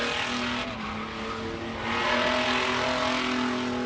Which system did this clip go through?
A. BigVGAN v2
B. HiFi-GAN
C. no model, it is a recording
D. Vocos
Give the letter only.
C